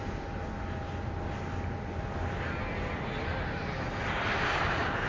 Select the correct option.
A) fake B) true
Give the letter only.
B